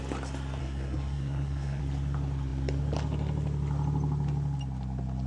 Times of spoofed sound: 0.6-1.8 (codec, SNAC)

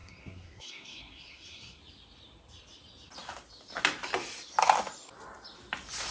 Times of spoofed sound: 0.0-1.8 (codec, SNAC)

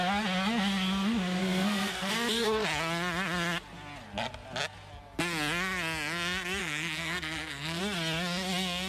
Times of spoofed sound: 1.4-2.1 (codec, SNAC); 6.6-7.8

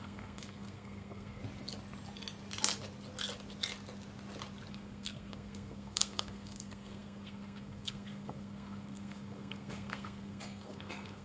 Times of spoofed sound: 0.0-1.4 (codec, SNAC); 4.7-11.2